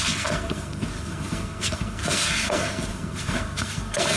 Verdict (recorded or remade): remade